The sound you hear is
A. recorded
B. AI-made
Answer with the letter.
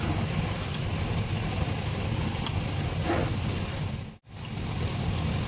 A